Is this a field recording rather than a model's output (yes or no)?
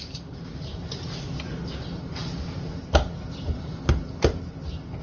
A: yes